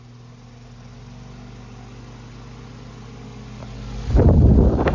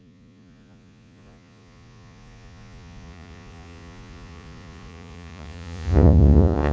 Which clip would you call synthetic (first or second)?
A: second